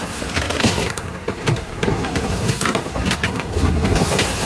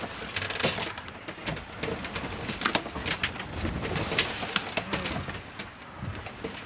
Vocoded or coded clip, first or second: first